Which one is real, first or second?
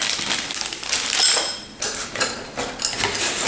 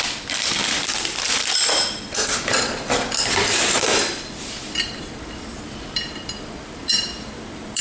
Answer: first